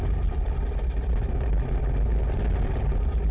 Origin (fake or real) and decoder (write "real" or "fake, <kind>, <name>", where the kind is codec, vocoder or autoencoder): real